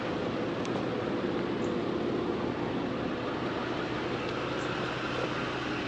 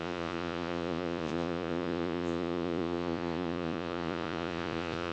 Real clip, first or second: first